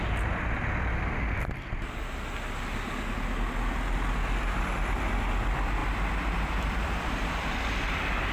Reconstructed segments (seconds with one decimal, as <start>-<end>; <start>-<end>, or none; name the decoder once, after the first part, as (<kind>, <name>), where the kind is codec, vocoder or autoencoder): 5.8-7.1 (vocoder, BigVGAN v2)